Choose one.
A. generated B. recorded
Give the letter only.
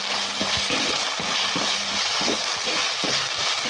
B